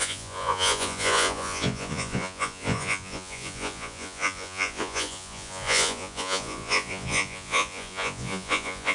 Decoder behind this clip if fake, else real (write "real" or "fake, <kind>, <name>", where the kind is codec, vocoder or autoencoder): fake, vocoder, Vocos